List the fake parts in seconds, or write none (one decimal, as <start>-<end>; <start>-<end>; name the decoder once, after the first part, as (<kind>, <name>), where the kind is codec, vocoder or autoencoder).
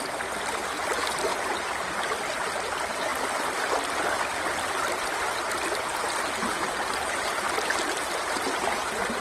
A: 1.3-1.9 (vocoder, BigVGAN v2); 6.5-8.4